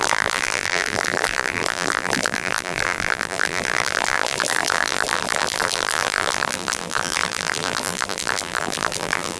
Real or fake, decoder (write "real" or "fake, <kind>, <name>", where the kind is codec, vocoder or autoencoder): fake, vocoder, BigVGAN v2